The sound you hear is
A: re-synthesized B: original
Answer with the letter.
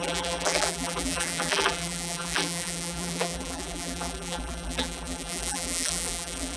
A